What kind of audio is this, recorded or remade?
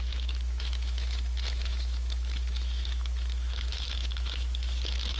remade